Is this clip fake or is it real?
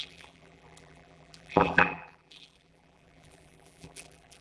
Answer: fake